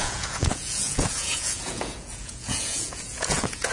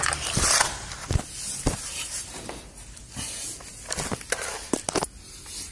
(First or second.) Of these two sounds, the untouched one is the second